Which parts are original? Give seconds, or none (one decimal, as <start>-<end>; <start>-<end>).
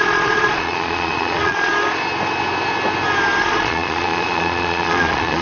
1.7-3.4